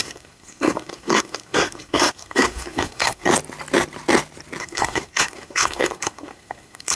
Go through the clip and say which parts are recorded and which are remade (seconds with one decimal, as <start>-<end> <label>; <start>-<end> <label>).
0.0-3.3 remade; 3.3-4.6 recorded; 4.6-7.0 remade